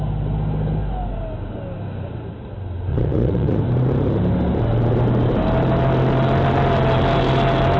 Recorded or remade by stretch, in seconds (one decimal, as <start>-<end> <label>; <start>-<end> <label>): 0.0-2.9 recorded; 2.9-3.6 remade; 3.6-7.8 recorded